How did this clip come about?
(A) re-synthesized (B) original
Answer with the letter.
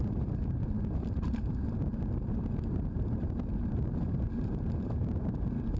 A